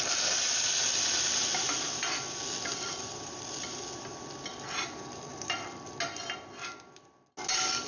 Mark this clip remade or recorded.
recorded